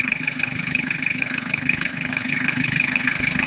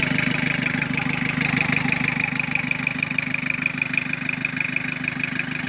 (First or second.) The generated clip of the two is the first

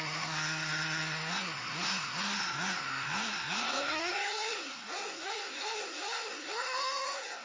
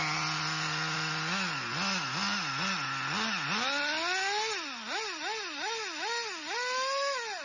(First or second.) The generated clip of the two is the first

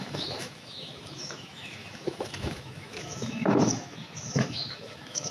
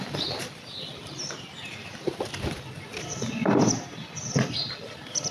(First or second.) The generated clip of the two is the first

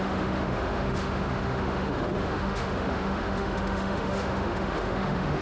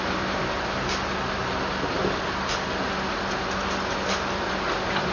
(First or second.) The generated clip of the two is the first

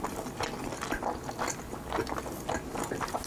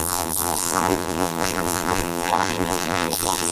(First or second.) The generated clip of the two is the second